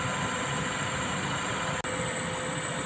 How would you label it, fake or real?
real